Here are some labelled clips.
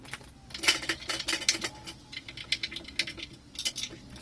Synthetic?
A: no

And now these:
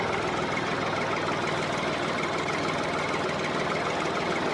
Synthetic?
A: no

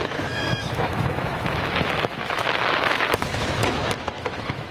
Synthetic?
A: yes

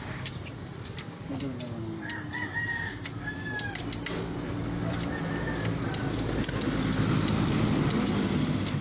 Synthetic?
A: no